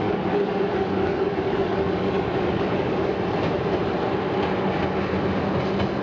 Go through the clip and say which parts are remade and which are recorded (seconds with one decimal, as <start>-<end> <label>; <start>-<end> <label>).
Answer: 0.0-3.1 remade; 3.1-6.0 recorded